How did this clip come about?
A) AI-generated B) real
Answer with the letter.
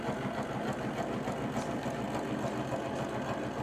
B